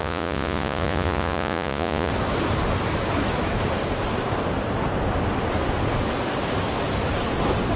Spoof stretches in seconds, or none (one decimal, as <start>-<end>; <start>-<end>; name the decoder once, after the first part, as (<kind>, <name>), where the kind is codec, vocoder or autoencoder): 0.0-2.1 (vocoder, Vocos)